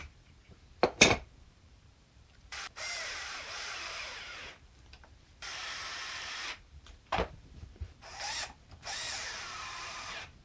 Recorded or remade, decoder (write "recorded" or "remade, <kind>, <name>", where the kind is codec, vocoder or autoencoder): remade, vocoder, BigVGAN v2